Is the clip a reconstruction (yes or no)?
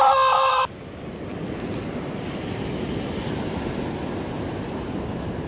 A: no